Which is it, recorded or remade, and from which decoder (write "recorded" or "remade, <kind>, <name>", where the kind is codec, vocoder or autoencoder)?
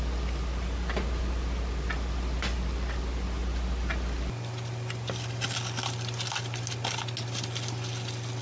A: recorded